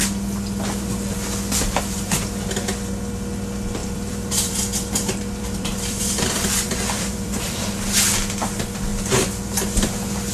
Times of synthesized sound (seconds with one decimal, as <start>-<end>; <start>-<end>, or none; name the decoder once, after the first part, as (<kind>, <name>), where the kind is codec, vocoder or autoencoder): 3.8-7.6 (vocoder, BigVGAN v2)